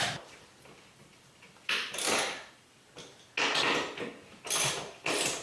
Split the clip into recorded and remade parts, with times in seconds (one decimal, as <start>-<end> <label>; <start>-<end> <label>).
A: 0.0-5.4 recorded